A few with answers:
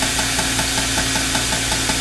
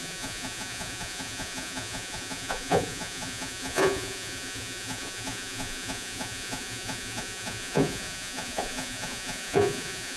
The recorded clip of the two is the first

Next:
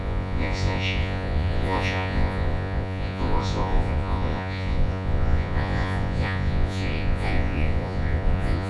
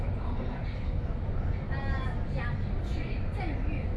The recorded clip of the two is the second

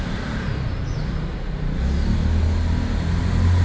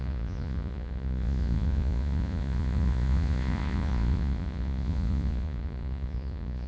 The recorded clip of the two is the first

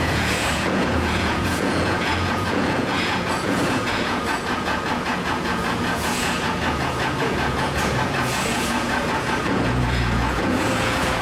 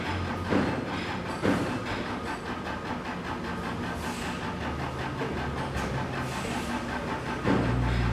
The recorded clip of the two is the second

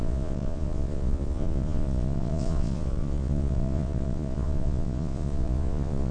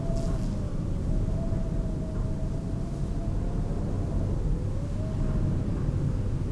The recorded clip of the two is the second